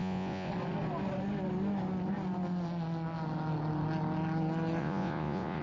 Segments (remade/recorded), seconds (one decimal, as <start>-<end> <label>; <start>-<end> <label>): 0.0-0.5 remade; 0.5-4.8 recorded; 4.8-5.6 remade